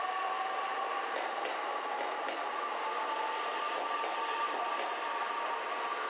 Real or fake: real